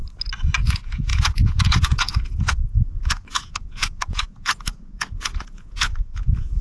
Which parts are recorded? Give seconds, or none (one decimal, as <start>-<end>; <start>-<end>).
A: 0.0-0.6